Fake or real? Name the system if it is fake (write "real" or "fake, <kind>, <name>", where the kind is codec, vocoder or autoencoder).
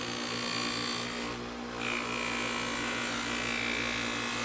real